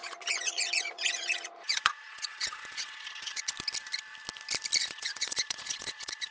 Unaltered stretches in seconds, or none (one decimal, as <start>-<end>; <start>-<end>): 3.5-4.8